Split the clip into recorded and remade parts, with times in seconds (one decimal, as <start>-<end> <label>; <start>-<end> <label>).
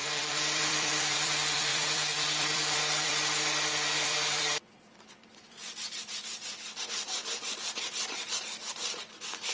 0.0-7.2 remade; 7.2-8.4 recorded; 8.4-9.5 remade